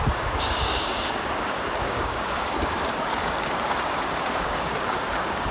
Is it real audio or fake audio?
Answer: fake